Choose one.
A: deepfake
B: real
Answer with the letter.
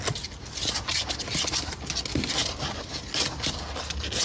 B